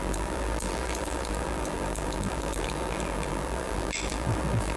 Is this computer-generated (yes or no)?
yes